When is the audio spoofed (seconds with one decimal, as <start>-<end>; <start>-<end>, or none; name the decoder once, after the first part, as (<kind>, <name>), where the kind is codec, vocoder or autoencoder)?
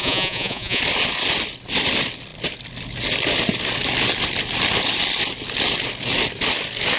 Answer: 0.0-0.8 (vocoder, Vocos)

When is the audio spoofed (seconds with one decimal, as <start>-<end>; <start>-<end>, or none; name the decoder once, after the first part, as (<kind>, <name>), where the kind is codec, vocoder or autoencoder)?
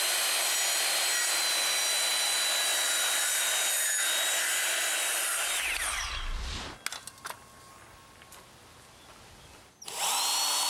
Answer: 2.7-3.4 (vocoder, BigVGAN v2)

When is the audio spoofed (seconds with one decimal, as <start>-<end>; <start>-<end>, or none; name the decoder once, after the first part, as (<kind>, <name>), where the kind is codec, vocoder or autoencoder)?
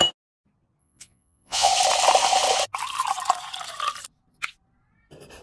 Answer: 0.8-1.7 (vocoder, Vocos)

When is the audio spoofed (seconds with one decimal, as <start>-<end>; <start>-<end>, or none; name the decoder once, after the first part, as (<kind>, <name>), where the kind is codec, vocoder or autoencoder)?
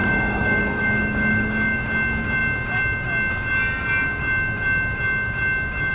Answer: 0.0-1.8 (codec, DAC)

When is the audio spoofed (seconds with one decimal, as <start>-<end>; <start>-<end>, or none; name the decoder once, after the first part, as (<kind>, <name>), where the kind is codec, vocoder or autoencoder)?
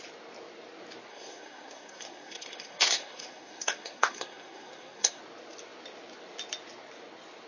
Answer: 1.1-5.2 (codec, SNAC)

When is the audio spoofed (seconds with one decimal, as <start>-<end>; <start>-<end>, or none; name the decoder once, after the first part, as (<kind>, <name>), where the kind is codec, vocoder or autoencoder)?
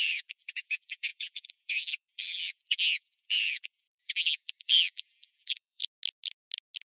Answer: 0.0-5.8 (vocoder, BigVGAN v2)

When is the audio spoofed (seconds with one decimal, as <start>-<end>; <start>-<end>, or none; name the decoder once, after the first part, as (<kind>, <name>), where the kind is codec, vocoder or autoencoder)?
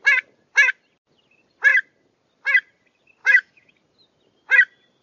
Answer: 3.2-3.7 (autoencoder, DAC-VAE)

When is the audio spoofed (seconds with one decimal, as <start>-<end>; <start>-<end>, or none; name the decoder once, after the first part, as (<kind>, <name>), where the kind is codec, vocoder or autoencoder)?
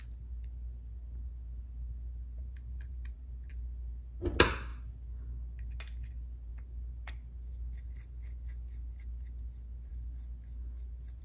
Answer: 2.4-3.5 (vocoder, BigVGAN v2)